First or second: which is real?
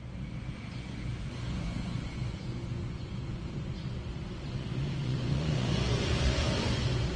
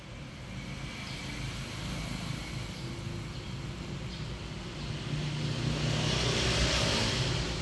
second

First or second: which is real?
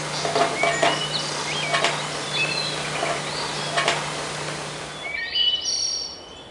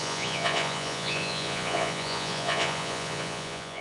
first